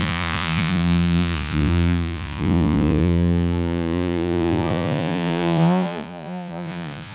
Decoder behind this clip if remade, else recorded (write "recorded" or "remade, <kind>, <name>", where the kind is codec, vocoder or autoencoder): remade, vocoder, Vocos